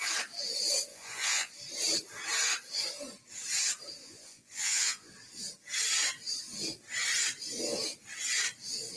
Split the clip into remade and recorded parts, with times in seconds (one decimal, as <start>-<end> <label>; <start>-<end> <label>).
0.0-0.9 recorded; 0.9-1.5 remade; 1.5-4.0 recorded; 4.0-5.1 remade; 5.1-9.0 recorded